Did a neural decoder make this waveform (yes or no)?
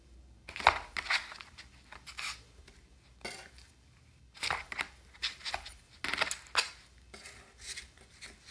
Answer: no